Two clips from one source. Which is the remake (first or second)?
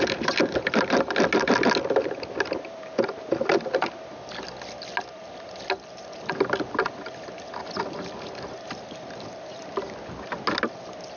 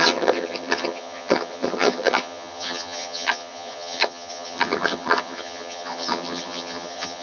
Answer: second